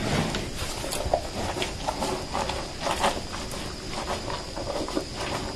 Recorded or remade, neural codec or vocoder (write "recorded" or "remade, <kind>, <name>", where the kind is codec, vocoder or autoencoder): recorded